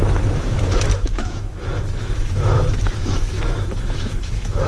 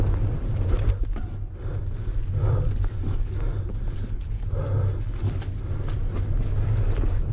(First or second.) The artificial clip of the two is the first